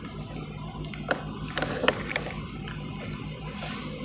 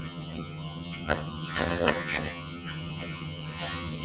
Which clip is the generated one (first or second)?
second